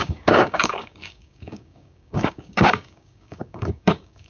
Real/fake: fake